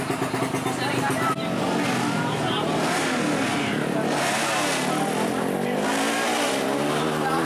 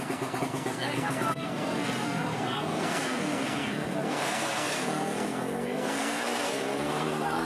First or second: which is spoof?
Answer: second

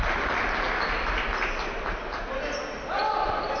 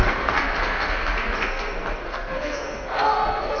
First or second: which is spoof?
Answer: second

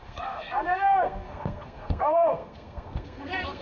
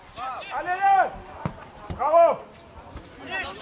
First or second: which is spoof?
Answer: first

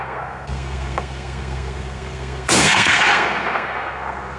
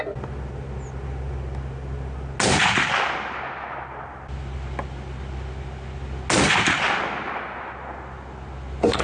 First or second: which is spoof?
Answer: first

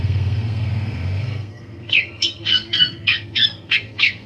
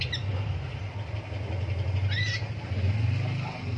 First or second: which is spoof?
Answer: first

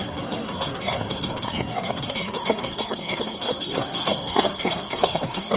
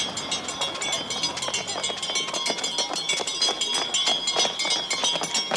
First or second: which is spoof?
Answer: first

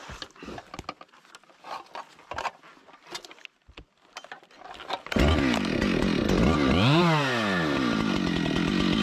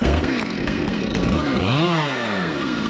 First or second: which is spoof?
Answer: second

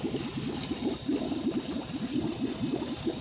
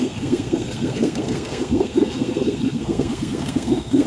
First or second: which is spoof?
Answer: second